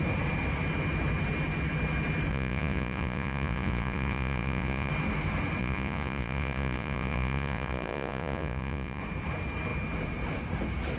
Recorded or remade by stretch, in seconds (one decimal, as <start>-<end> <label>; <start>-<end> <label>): 0.0-2.3 recorded; 2.3-4.9 remade; 4.9-5.6 recorded; 5.6-9.0 remade; 9.0-11.0 recorded